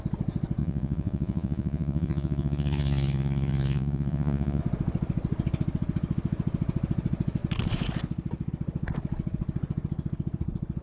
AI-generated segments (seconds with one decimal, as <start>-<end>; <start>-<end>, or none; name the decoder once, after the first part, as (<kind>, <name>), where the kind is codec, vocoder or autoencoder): 0.6-4.6 (vocoder, Vocos)